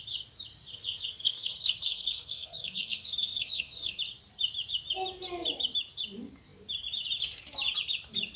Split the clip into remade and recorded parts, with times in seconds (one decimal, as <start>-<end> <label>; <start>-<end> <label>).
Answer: 0.0-0.7 recorded; 0.7-4.0 remade; 4.0-8.4 recorded